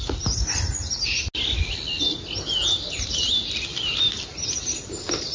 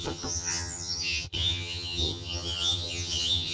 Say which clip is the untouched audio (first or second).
first